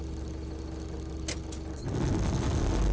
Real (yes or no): yes